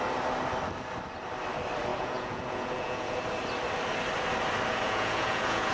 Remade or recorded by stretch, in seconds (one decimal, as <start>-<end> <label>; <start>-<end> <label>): 0.0-1.9 recorded; 1.9-3.2 remade; 3.2-4.7 recorded; 4.7-5.7 remade